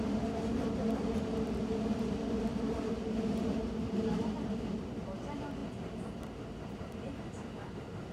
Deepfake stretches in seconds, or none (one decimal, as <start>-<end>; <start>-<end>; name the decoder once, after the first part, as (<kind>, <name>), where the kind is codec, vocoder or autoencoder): 2.5-3.4 (vocoder, BigVGAN v2)